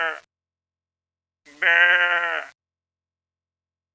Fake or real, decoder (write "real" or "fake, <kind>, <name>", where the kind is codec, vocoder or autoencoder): real